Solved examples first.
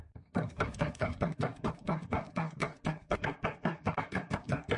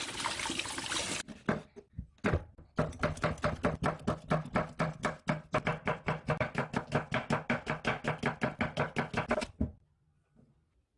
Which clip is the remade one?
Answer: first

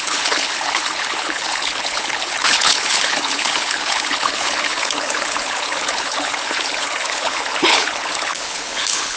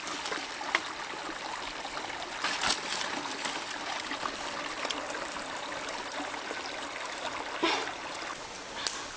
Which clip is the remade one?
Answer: first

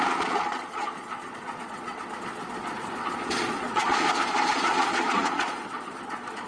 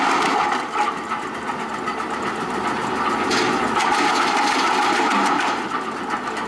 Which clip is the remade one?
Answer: first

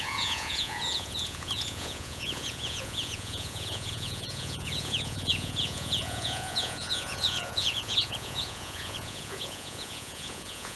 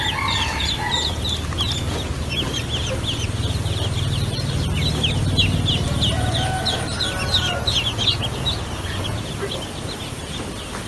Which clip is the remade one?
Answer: first